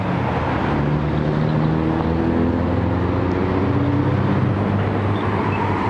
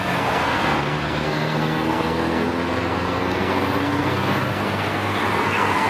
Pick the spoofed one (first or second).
second